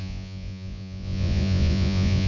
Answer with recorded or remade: remade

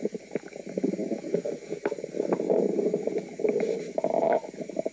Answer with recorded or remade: recorded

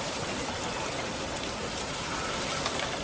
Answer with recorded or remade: recorded